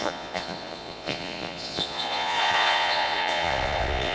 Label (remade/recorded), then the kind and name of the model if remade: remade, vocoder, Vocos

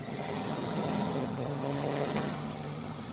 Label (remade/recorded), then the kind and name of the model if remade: remade, vocoder, HiFi-GAN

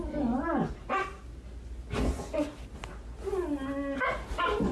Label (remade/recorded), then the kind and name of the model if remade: recorded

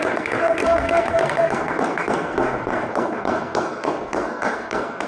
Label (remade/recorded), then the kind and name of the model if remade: remade, codec, SNAC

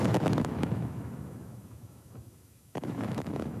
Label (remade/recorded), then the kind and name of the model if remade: remade, autoencoder, DAC-VAE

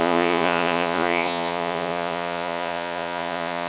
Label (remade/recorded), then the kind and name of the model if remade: remade, vocoder, Vocos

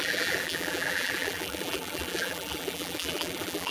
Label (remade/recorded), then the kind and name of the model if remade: remade, vocoder, BigVGAN v2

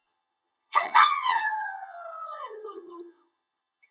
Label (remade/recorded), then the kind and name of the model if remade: remade, vocoder, HiFi-GAN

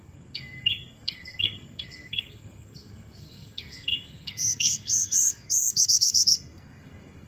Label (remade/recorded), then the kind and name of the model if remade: remade, codec, SNAC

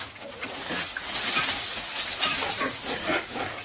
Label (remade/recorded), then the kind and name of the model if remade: remade, vocoder, Vocos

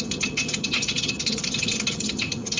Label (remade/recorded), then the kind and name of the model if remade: remade, vocoder, HiFi-GAN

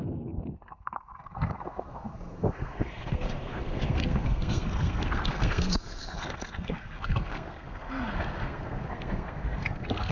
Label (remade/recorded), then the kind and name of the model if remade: remade, codec, SNAC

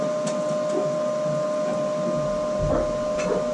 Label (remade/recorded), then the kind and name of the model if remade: recorded